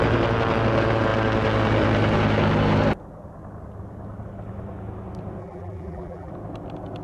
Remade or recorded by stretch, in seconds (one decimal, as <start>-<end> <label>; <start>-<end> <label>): 0.0-5.4 recorded; 5.4-6.3 remade; 6.3-7.0 recorded